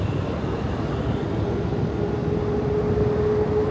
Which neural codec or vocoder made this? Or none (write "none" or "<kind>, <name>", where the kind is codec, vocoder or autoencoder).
none